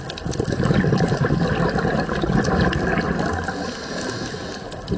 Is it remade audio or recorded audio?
recorded